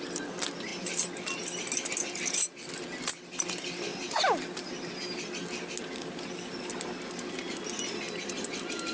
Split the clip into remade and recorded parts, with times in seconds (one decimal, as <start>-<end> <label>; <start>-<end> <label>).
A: 0.0-8.9 recorded